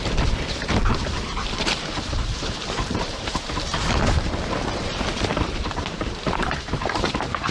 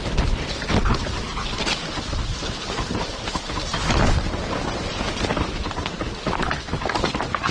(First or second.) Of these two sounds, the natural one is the second